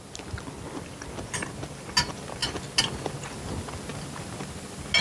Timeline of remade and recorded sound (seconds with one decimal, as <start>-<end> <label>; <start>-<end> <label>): 0.0-5.0 recorded